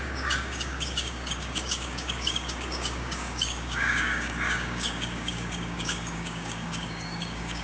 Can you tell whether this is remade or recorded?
remade